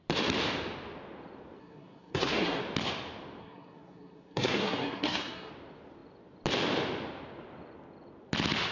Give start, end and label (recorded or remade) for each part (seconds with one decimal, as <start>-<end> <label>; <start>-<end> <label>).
0.0-1.6 recorded; 1.6-2.6 remade; 2.6-3.4 recorded; 3.4-5.5 remade; 5.5-8.7 recorded